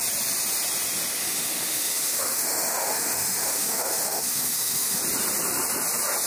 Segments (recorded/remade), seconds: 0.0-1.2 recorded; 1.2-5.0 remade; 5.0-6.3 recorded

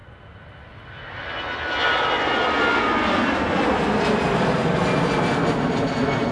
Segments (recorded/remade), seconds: 0.0-6.3 recorded

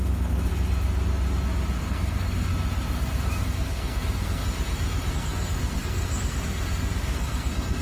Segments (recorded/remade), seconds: 0.0-0.5 remade; 0.5-1.8 recorded; 1.8-2.5 remade; 2.5-3.4 recorded; 3.4-4.4 remade; 4.4-5.1 recorded; 5.1-7.8 remade